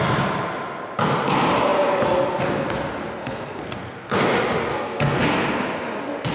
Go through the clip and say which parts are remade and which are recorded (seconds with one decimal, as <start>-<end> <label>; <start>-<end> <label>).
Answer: 0.0-3.2 recorded; 3.2-4.2 remade; 4.2-4.7 recorded; 4.7-5.2 remade; 5.2-6.3 recorded